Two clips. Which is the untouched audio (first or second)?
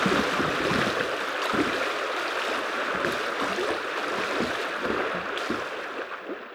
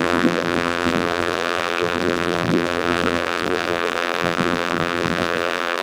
first